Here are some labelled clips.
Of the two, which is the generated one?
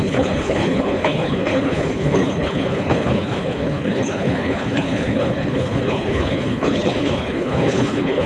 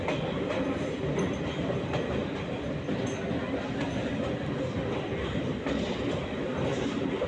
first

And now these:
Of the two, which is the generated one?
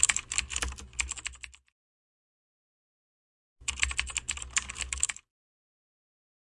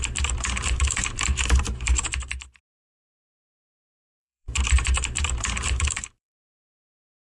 second